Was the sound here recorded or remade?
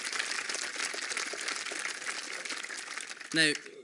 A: recorded